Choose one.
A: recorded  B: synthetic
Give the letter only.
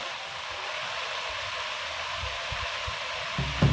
A